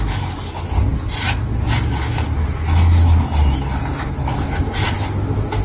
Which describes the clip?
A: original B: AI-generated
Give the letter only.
A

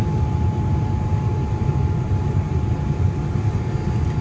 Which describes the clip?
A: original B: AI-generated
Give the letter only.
A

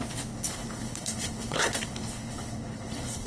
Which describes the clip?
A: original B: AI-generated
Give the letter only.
B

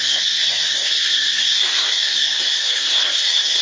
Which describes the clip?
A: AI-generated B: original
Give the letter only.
A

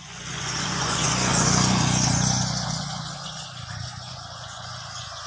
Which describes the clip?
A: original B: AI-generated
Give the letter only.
B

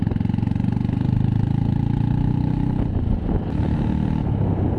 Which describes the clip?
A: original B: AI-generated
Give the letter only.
A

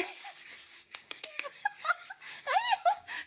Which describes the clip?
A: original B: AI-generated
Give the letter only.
B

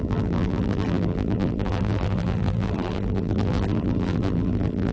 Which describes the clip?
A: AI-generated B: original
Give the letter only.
A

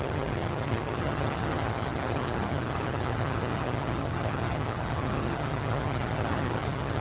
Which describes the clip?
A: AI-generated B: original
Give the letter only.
A